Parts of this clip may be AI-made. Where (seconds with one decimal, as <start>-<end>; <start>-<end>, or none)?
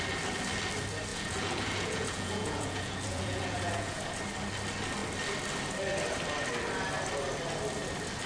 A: 1.1-4.2